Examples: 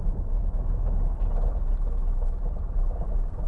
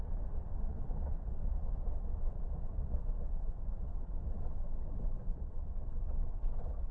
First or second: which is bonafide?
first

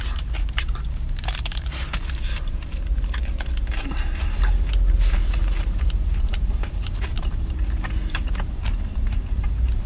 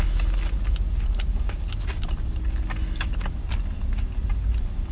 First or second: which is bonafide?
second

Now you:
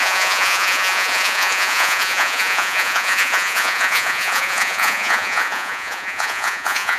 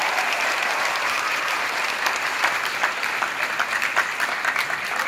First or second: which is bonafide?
second